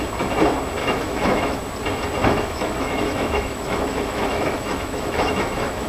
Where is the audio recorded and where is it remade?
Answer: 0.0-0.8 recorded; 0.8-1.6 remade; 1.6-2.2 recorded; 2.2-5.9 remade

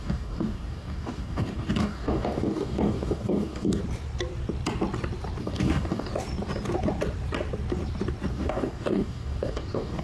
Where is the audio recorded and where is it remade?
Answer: 0.0-3.8 remade; 3.8-5.4 recorded; 5.4-6.1 remade; 6.1-8.3 recorded; 8.3-10.0 remade

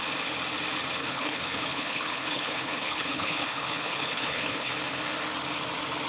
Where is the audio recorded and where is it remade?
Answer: 0.0-1.0 recorded; 1.0-4.7 remade; 4.7-6.1 recorded

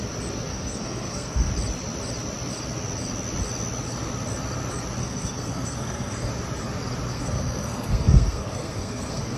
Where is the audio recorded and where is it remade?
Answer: 0.0-0.5 recorded; 0.5-1.5 remade; 1.5-5.0 recorded; 5.0-6.3 remade; 6.3-7.1 recorded; 7.1-9.4 remade

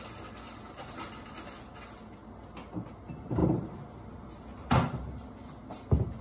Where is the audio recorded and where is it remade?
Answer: 0.0-6.2 recorded